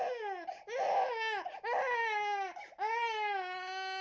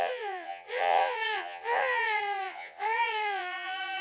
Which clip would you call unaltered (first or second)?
first